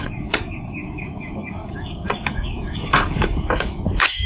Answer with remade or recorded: remade